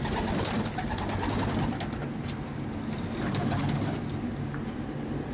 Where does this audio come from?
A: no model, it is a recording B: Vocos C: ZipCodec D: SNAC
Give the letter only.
A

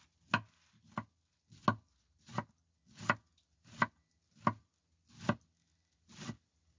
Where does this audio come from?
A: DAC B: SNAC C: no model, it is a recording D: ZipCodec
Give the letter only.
C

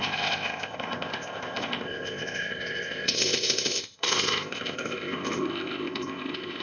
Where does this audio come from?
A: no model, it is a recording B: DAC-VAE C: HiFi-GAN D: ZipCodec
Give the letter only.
D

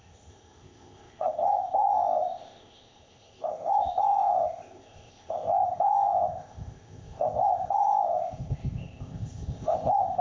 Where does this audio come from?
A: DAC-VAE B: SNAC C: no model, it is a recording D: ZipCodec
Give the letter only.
D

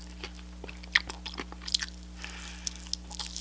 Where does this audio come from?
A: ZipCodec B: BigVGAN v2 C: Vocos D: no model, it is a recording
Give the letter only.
D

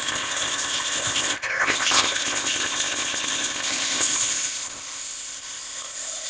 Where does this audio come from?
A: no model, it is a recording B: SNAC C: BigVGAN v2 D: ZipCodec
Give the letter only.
D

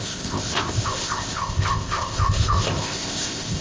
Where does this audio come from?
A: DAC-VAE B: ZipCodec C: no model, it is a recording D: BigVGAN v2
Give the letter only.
B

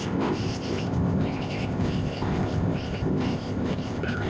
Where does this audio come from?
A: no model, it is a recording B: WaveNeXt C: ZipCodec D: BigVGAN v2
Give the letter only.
C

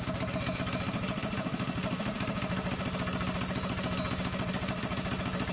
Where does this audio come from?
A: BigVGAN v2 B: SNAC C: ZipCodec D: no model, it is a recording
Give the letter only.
D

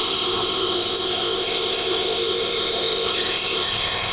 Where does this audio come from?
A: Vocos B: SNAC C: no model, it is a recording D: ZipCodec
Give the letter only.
D